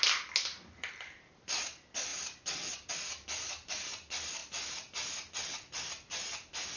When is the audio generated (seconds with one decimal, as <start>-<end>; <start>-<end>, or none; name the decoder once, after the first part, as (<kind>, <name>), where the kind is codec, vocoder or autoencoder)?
none